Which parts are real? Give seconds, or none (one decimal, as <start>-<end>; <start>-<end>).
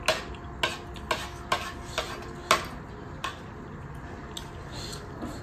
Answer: 0.0-5.4